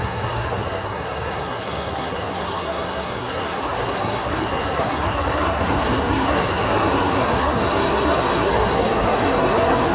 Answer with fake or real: fake